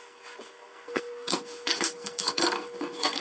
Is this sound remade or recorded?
remade